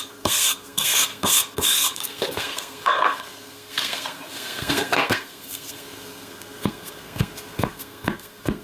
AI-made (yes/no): yes